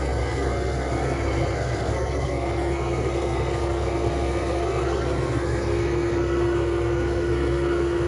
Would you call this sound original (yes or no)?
no